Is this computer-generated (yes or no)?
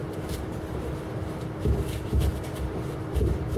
no